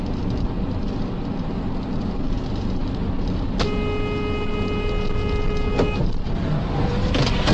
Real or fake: real